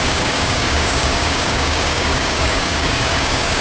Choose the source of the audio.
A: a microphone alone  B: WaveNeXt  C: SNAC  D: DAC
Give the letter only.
D